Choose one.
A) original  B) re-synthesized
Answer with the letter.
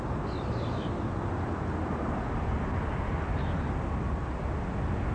A